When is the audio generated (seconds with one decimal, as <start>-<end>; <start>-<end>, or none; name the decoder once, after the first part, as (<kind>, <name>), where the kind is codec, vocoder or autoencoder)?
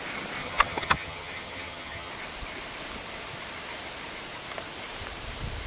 0.4-2.1 (vocoder, HiFi-GAN)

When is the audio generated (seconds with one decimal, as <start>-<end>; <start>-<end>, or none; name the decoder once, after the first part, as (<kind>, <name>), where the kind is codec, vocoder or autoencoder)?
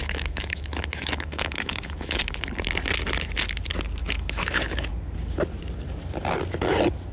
0.0-2.2 (autoencoder, DAC-VAE); 4.0-4.9